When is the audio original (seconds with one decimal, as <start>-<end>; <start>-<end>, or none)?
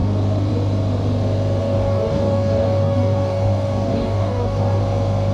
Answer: 0.0-1.6; 4.8-5.3